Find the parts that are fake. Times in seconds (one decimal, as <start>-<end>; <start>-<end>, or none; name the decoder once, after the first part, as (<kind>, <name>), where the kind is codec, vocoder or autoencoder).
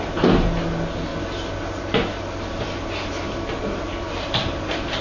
none